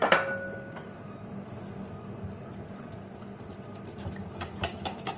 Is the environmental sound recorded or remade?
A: recorded